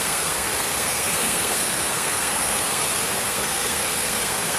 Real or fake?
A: fake